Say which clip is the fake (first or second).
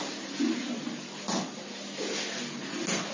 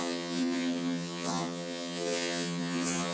second